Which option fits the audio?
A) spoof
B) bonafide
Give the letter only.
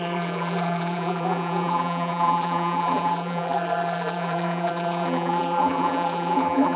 A